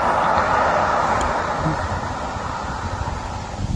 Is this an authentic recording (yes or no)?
yes